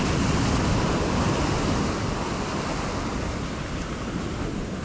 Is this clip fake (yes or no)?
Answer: no